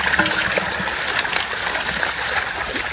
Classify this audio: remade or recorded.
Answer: recorded